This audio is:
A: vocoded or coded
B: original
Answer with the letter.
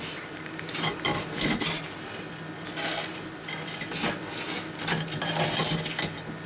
B